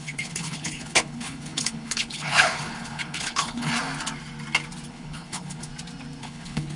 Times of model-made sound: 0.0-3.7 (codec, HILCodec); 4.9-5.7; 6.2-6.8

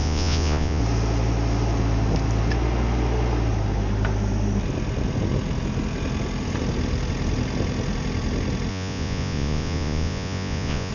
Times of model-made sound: 0.0-0.8 (vocoder, Vocos); 8.7-10.9

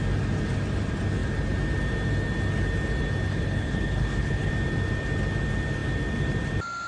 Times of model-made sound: 3.3-4.5 (codec, HILCodec)

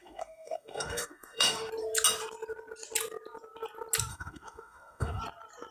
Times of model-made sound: 0.0-1.7 (autoencoder, DAC-VAE); 4.1-5.2

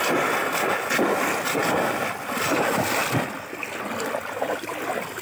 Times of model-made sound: none

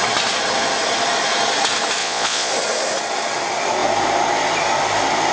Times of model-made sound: 2.0-2.5 (vocoder, Vocos)

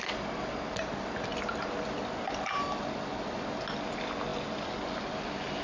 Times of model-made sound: none